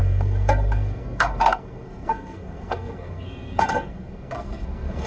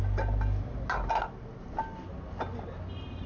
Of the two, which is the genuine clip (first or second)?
second